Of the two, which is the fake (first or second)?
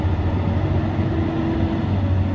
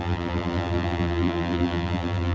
second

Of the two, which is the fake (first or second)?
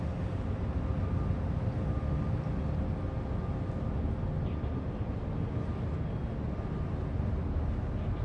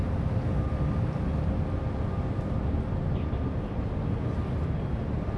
second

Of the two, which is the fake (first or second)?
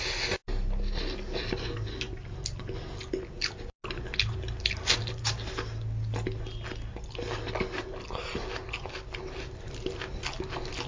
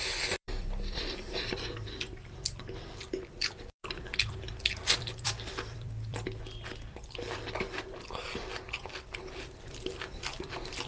second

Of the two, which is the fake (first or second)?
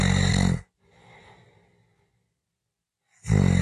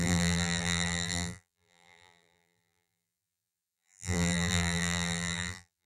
second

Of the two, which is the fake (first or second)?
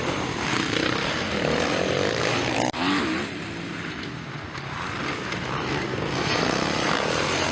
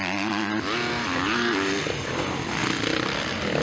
first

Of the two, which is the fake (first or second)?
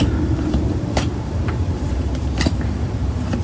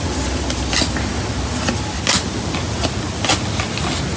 first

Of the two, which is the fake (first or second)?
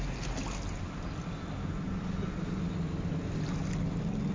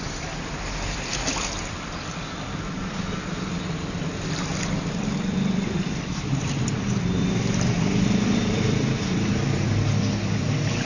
second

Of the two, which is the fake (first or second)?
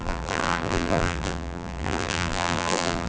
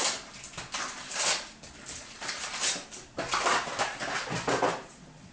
first